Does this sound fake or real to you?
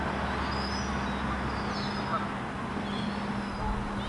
real